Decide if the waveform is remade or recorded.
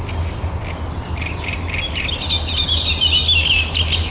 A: recorded